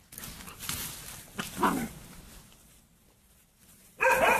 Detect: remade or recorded recorded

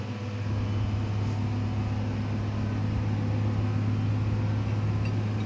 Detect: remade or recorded recorded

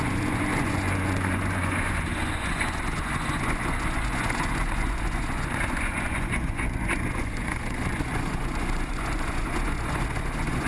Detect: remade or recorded remade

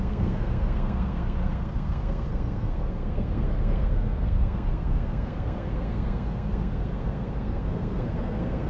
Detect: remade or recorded remade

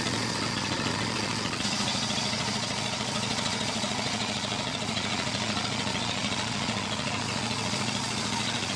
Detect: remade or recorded remade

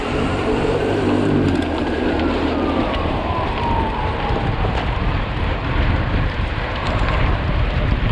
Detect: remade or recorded remade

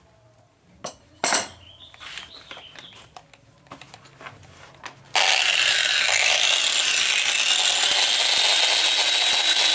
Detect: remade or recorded recorded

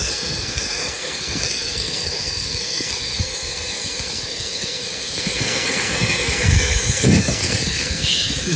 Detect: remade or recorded remade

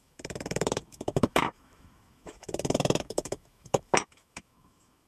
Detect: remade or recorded remade